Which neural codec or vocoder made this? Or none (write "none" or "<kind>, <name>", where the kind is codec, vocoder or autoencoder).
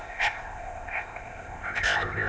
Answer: codec, ZipCodec